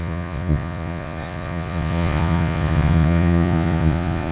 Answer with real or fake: fake